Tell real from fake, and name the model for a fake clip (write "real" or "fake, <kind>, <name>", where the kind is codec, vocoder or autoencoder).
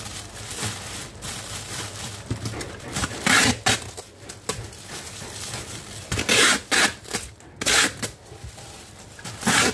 real